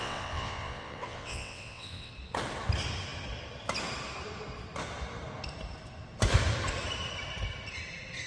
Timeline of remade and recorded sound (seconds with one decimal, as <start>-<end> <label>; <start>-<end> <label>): 0.0-2.1 remade; 2.1-8.3 recorded